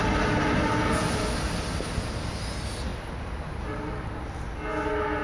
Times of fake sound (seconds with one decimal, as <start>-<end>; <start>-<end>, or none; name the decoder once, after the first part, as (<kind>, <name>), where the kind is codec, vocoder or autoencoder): none